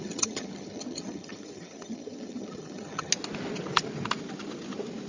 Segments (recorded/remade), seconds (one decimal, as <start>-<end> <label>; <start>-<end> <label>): 0.0-3.1 remade; 3.1-5.1 recorded